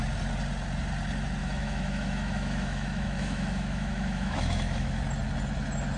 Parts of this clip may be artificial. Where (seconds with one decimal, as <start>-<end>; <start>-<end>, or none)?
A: 1.4-5.0